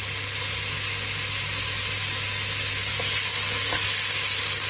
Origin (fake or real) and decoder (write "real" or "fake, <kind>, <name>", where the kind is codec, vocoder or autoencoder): real